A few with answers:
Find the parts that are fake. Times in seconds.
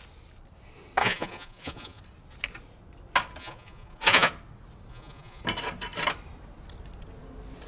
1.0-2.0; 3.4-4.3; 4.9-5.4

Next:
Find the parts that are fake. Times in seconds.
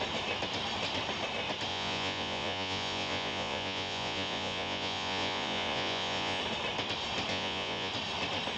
1.7-6.4; 7.3-7.9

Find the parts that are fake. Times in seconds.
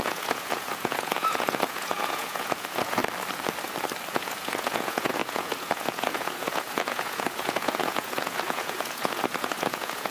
0.0-3.0; 4.1-10.1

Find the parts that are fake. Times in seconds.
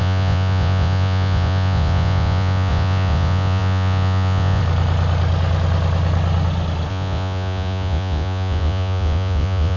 0.0-4.6; 6.9-9.8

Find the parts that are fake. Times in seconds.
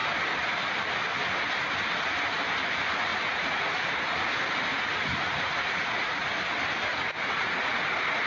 3.1-4.3; 4.7-6.3; 6.9-7.8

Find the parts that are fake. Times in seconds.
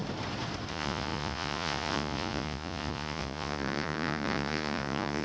0.7-5.2